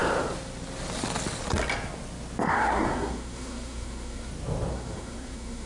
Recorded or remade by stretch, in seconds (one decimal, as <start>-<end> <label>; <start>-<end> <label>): 0.0-2.5 recorded; 2.5-4.3 remade; 4.3-4.7 recorded; 4.7-5.7 remade